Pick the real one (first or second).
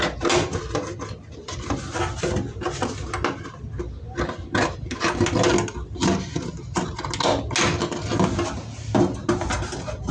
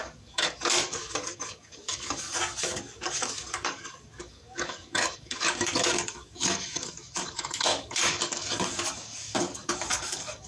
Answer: first